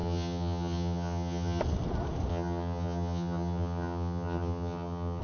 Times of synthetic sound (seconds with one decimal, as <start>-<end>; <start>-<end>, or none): 0.0-1.6; 2.3-5.2